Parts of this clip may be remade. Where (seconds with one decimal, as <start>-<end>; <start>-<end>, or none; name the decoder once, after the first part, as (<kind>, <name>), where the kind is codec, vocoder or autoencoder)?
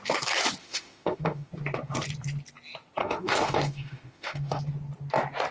0.6-1.5 (autoencoder, DAC-VAE); 3.0-4.6